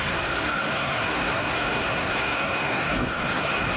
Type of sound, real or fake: fake